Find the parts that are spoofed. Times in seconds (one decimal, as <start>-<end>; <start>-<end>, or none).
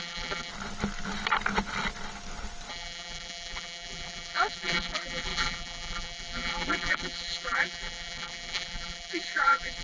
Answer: 0.0-0.5; 2.7-9.8